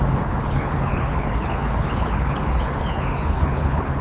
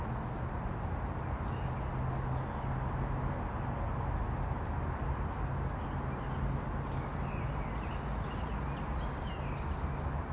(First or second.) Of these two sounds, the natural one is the second